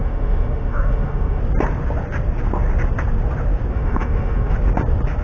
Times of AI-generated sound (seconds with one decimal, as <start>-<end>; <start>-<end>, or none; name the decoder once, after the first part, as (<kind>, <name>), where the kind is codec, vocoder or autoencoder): 0.0-1.4 (autoencoder, DAC-VAE); 3.7-4.5